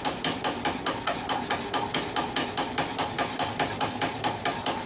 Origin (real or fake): real